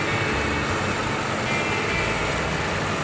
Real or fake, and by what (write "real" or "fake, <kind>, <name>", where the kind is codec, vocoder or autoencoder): real